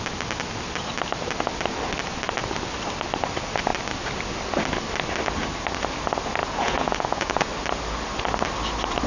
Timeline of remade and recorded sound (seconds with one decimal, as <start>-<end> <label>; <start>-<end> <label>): 0.0-6.4 recorded; 6.4-7.5 remade; 7.5-9.1 recorded